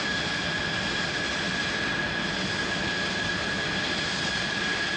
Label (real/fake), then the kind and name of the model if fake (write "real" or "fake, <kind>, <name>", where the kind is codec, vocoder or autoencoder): real